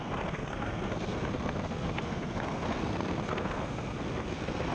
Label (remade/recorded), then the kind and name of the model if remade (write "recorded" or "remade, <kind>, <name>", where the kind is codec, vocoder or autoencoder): remade, codec, SNAC